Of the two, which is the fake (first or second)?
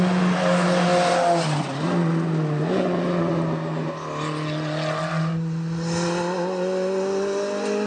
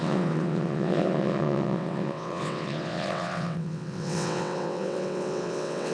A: second